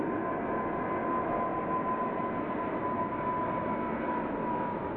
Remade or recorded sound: recorded